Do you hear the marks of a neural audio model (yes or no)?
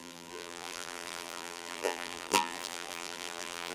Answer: yes